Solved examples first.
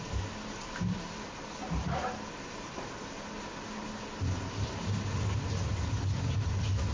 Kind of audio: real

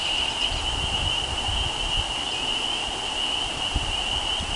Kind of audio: real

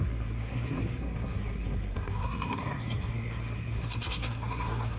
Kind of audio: fake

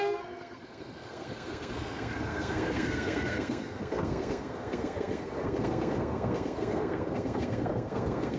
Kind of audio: fake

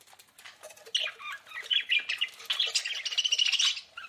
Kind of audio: real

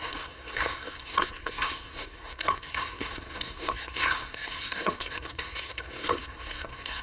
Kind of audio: fake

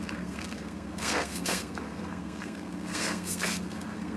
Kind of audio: fake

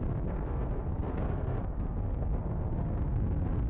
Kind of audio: fake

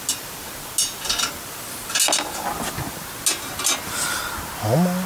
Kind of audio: real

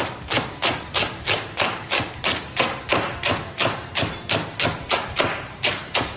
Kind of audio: real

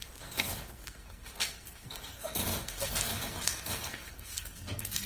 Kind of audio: fake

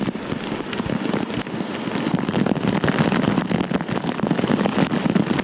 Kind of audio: real